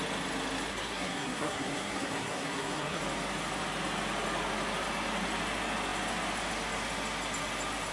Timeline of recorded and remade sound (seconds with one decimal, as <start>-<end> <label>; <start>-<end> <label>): 0.0-0.7 recorded; 0.7-3.0 remade; 3.0-7.9 recorded